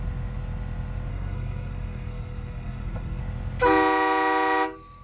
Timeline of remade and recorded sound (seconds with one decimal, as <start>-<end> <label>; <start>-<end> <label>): 0.0-1.1 recorded; 1.1-3.2 remade; 3.2-5.0 recorded